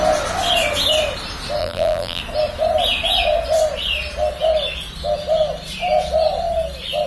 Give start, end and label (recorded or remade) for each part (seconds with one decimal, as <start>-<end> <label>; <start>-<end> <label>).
0.0-1.6 recorded; 1.6-2.2 remade; 2.2-7.1 recorded